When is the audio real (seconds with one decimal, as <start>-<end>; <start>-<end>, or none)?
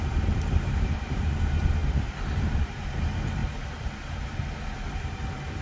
3.4-5.0